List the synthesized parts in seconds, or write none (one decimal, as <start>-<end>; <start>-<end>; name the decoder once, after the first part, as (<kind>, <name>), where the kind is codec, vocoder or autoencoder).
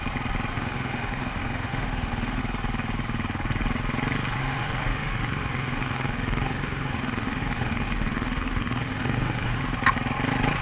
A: 0.5-2.4 (autoencoder, DAC-VAE); 4.4-9.6